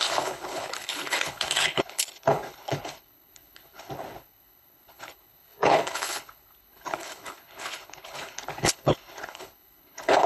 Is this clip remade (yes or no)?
yes